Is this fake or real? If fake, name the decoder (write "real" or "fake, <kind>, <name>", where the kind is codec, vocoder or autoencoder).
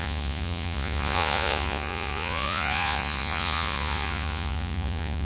fake, vocoder, Vocos